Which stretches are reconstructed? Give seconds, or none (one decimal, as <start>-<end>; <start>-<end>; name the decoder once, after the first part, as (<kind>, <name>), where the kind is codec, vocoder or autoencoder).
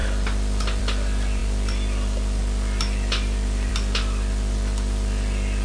none